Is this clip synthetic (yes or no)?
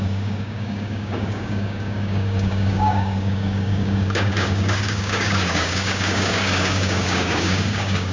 yes